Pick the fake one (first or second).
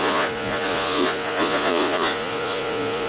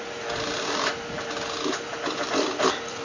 first